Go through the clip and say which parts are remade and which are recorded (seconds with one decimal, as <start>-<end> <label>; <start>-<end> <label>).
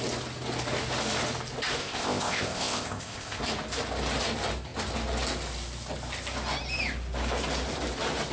0.0-1.8 recorded; 1.8-3.4 remade; 3.4-8.3 recorded